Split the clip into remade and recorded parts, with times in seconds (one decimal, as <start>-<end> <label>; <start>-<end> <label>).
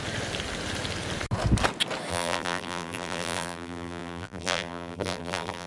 0.0-2.1 recorded; 2.1-5.7 remade